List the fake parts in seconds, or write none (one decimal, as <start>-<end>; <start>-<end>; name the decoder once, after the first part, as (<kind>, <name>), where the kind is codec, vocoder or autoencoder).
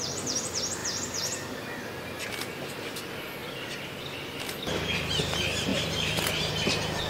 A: 5.7-6.5 (vocoder, BigVGAN v2)